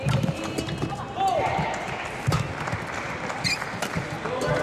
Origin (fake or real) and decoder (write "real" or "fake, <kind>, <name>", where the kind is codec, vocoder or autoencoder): real